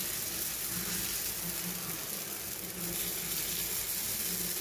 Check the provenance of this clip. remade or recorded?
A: recorded